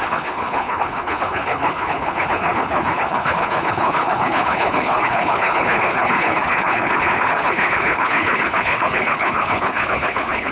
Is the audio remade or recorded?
remade